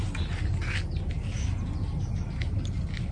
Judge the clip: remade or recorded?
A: recorded